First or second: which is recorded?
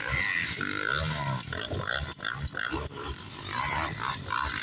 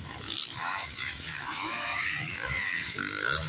first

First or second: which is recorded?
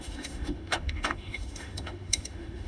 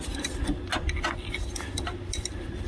second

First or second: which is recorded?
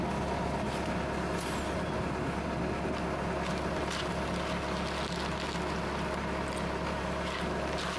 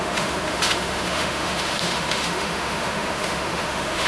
first